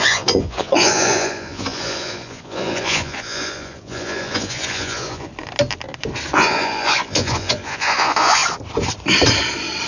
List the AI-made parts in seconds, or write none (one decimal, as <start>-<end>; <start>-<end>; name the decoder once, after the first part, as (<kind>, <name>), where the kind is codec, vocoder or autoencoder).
0.0-5.3 (vocoder, Vocos); 6.3-8.4